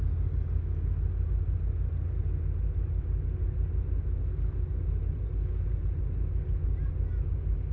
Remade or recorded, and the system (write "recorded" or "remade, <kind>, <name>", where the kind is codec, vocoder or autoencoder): recorded